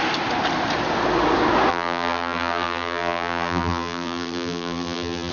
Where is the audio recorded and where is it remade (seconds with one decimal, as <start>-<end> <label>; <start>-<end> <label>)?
0.0-1.7 recorded; 1.7-5.3 remade